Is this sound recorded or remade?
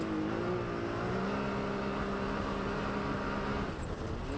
recorded